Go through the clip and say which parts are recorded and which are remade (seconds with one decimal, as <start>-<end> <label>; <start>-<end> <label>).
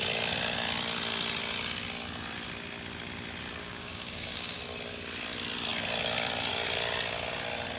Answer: 0.0-3.6 recorded; 3.6-4.6 remade; 4.6-7.8 recorded